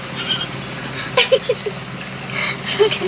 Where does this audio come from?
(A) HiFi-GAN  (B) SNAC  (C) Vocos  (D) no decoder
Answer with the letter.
D